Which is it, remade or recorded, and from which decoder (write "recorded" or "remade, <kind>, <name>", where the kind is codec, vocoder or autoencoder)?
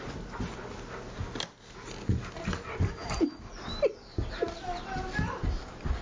recorded